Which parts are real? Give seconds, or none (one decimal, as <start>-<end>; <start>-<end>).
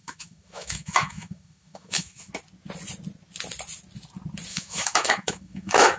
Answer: 2.3-4.5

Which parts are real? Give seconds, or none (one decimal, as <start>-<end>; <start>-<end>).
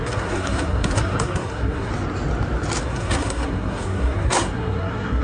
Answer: 1.9-2.8